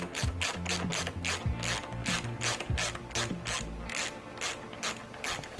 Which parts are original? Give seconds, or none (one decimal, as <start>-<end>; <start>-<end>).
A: 0.0-2.0; 3.5-5.6